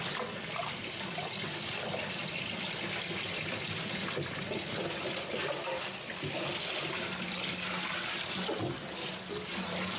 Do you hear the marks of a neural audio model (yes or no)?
no